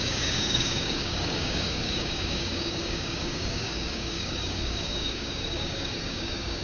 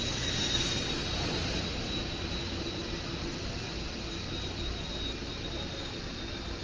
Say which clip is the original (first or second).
second